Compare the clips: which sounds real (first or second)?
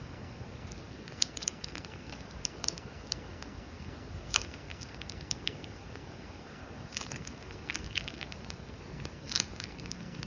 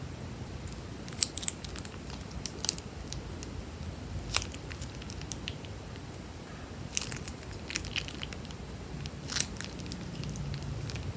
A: second